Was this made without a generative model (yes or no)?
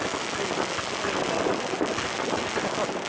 yes